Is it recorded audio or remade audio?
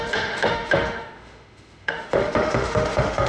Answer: remade